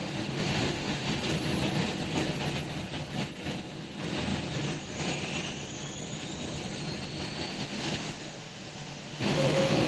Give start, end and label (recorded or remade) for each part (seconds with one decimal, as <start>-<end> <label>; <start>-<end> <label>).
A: 0.0-1.1 remade; 1.1-7.5 recorded; 7.5-9.9 remade